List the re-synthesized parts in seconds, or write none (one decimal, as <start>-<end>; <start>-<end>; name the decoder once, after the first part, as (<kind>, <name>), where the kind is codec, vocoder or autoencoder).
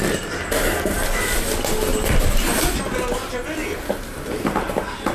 1.9-2.8 (vocoder, BigVGAN v2); 3.6-5.1